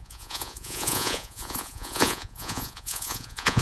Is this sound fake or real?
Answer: fake